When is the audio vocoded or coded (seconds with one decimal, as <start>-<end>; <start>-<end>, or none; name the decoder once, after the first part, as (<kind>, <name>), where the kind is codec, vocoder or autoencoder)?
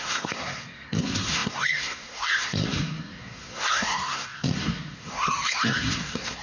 0.0-6.4 (codec, SNAC)